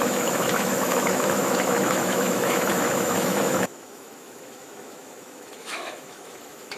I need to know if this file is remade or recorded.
remade